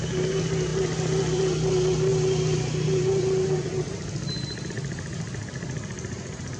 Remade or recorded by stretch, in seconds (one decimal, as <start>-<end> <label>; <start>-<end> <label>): 0.0-6.6 recorded